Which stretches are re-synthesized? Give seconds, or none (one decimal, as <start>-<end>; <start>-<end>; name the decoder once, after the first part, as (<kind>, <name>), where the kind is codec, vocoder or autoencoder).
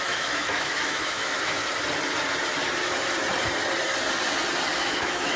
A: 0.0-1.6 (autoencoder, DAC-VAE); 4.8-5.4